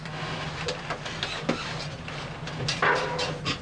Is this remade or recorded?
recorded